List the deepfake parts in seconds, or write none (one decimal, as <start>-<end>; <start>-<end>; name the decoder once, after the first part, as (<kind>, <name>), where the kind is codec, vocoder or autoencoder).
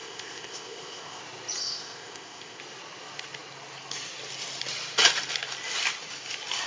0.0-1.2 (codec, ZipCodec); 1.6-2.6